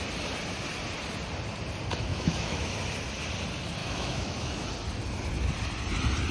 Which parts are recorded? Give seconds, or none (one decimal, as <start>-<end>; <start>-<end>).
0.0-2.1; 2.7-3.8; 4.7-6.3